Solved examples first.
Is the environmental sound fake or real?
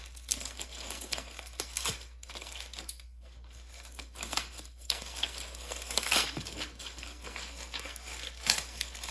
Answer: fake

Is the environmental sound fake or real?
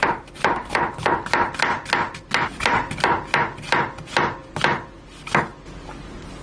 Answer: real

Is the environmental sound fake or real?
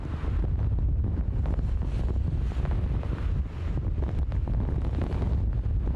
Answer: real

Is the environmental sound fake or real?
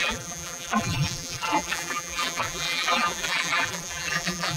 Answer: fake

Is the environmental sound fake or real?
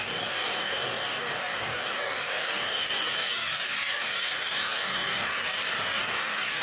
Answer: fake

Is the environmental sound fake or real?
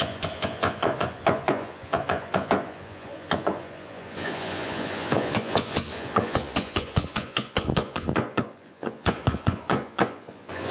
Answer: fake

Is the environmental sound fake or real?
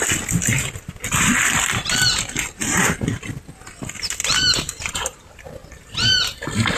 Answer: real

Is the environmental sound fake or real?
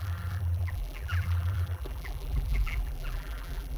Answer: fake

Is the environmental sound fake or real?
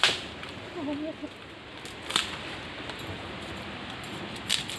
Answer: real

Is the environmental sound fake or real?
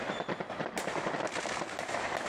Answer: real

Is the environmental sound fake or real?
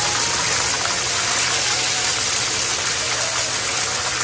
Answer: real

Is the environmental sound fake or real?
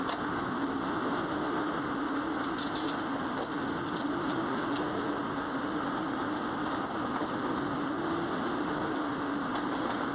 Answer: real